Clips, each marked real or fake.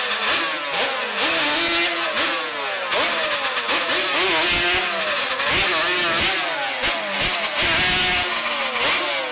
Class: real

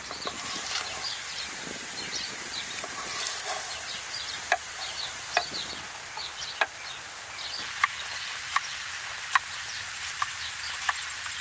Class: fake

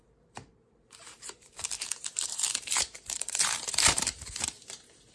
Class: fake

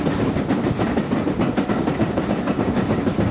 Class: real